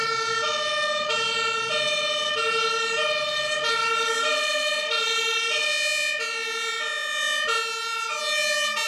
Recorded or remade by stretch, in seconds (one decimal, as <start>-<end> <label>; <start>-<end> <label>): 0.0-5.7 remade; 5.7-8.9 recorded